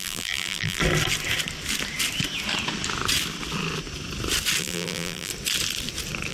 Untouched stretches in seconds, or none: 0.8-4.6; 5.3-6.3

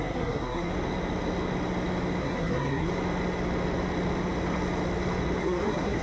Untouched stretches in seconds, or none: 0.7-2.2; 2.9-5.4

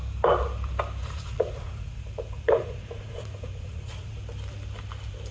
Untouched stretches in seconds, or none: 0.0-1.0; 4.2-5.3

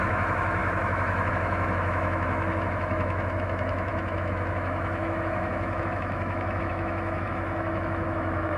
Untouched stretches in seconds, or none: none